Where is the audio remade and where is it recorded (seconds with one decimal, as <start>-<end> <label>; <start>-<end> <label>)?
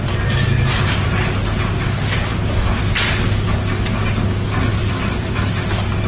0.0-2.3 recorded; 2.3-2.8 remade; 2.8-3.4 recorded; 3.4-4.1 remade; 4.1-4.7 recorded; 4.7-5.6 remade; 5.6-6.1 recorded